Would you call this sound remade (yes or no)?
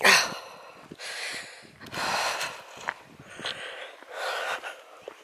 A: no